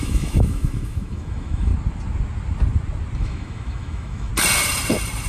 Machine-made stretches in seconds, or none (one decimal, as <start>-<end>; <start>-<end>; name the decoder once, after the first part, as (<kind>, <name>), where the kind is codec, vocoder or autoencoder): 0.0-1.7 (autoencoder, DAC-VAE); 3.2-4.3